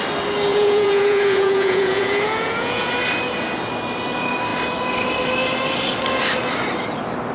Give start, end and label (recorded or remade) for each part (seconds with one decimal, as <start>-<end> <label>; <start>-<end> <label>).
0.0-0.5 recorded; 0.5-2.9 remade; 2.9-7.3 recorded